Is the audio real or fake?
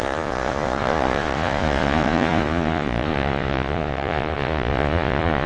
fake